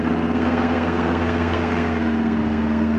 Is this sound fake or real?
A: fake